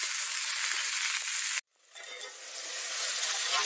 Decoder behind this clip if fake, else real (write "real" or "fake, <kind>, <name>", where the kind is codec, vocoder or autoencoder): real